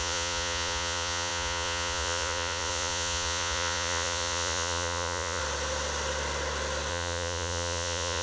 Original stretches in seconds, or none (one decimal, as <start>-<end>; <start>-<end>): 5.4-6.9